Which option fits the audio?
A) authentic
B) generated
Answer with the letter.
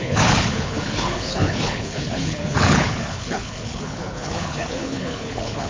B